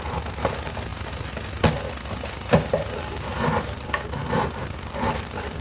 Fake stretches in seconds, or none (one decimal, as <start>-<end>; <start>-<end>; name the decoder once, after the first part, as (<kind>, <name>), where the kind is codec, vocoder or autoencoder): 4.2-5.6 (vocoder, BigVGAN v2)